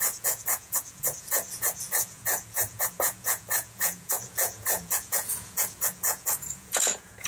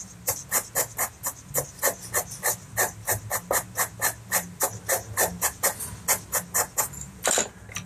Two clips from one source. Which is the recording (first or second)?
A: second